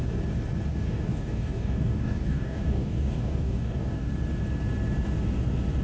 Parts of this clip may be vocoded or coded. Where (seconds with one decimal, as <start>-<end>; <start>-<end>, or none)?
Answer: 0.7-4.1